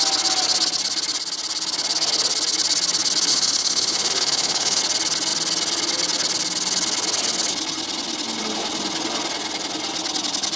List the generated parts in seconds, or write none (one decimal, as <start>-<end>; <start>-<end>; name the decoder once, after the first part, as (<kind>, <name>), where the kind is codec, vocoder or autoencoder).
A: 3.3-4.8 (autoencoder, DAC-VAE)